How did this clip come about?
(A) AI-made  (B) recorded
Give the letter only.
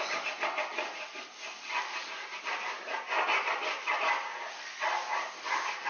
B